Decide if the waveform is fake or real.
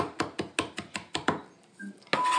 real